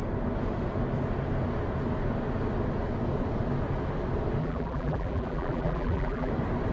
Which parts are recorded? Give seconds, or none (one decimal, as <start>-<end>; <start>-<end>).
0.0-4.4; 6.3-6.7